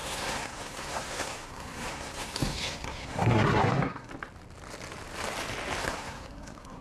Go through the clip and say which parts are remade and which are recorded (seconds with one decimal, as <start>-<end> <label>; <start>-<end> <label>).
0.0-4.1 remade; 4.1-5.8 recorded; 5.8-6.8 remade